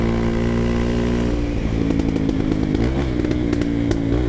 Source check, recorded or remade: recorded